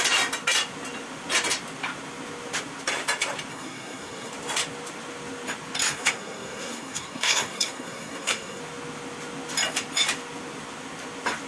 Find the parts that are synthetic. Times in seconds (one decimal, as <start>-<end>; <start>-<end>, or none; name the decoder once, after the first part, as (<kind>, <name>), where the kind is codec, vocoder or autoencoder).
3.5-4.3 (codec, SNAC); 5.9-8.6